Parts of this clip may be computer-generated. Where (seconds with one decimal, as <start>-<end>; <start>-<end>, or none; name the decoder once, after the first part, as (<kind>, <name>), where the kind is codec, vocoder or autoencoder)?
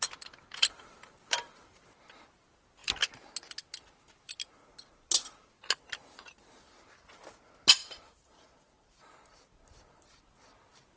0.5-2.0 (vocoder, BigVGAN v2); 7.8-9.0